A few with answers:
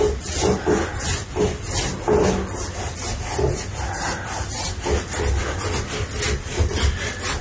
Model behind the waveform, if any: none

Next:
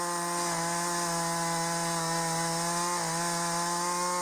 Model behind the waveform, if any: none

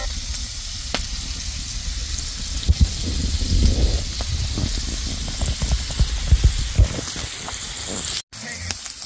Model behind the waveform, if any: none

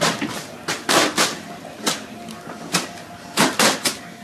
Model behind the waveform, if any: none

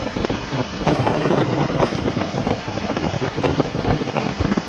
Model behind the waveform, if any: codec, SNAC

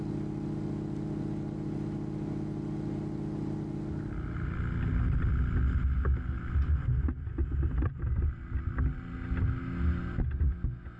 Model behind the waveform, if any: none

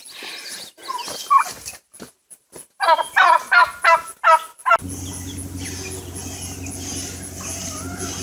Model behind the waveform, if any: none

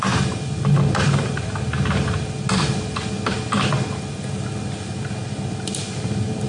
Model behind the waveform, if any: none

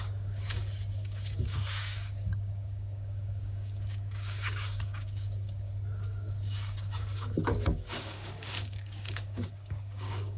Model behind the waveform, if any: codec, DAC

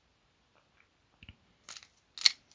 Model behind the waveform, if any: none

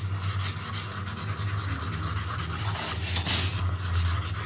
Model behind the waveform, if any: none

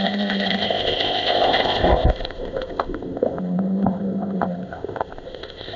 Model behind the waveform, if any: codec, ZipCodec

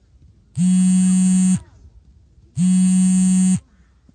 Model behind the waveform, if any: none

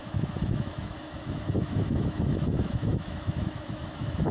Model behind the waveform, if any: autoencoder, DAC-VAE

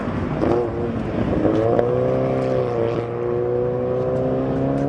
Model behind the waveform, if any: none